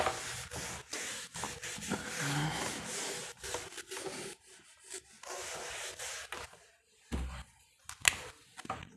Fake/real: real